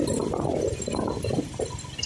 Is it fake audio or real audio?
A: real